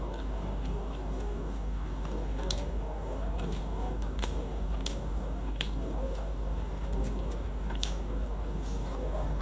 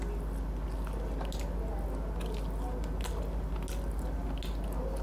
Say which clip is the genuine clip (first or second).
second